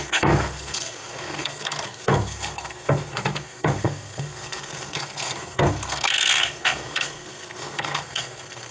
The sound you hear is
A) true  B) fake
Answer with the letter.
B